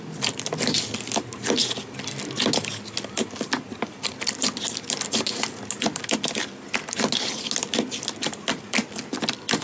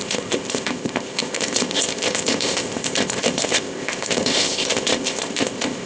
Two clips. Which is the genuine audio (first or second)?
first